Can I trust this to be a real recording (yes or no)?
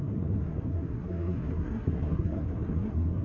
no